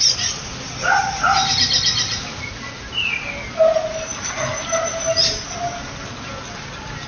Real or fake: real